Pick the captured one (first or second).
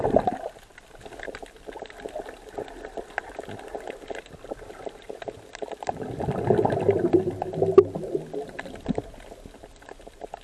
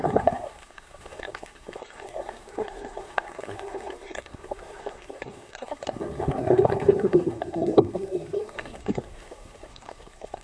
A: first